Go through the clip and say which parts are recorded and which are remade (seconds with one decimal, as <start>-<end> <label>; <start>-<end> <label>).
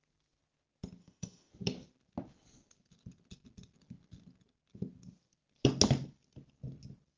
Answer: 0.0-1.0 recorded; 1.0-1.5 remade; 1.5-7.2 recorded